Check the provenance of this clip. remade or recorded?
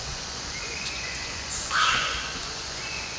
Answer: remade